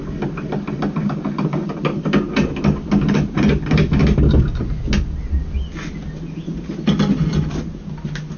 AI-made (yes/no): no